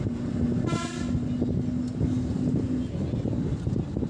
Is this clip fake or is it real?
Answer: real